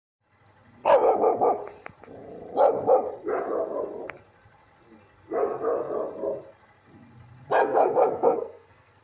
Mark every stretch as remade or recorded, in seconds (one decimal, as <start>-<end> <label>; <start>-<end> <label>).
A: 0.0-7.6 recorded; 7.6-9.0 remade